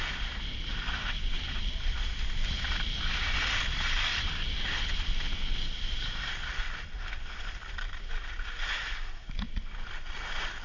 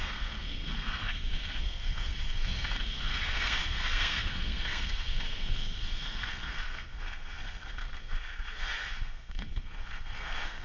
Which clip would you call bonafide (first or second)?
first